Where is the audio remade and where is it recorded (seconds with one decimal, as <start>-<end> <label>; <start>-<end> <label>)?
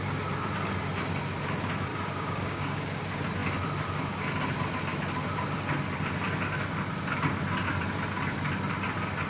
0.0-1.9 recorded; 1.9-3.0 remade; 3.0-9.3 recorded